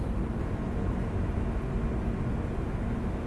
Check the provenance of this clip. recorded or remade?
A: recorded